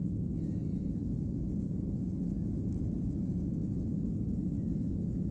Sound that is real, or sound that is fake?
real